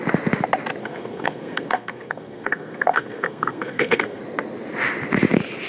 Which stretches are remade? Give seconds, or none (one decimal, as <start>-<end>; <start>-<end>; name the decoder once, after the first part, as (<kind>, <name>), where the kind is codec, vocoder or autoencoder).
0.8-4.2 (codec, SNAC)